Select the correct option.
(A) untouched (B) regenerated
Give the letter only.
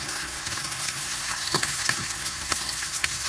B